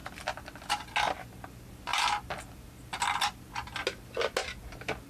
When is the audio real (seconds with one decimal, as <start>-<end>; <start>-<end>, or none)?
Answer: 0.0-5.1